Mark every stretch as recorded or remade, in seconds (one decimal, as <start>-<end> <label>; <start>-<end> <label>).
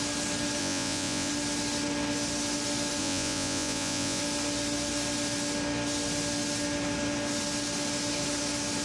0.0-0.6 recorded; 0.6-1.3 remade; 1.3-3.0 recorded; 3.0-4.2 remade; 4.2-8.8 recorded